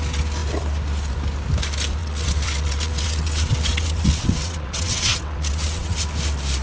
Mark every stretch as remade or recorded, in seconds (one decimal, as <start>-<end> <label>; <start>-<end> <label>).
0.0-2.0 recorded; 2.0-6.0 remade; 6.0-6.6 recorded